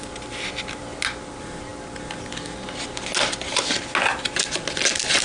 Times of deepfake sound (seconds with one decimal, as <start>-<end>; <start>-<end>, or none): none